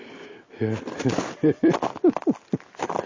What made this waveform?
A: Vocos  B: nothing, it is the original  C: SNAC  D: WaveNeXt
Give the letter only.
B